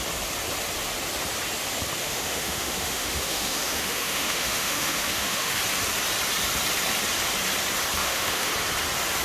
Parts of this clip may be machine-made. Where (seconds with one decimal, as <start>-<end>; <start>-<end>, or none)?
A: 2.0-5.6; 8.0-8.5